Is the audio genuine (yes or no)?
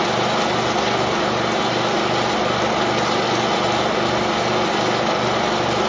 yes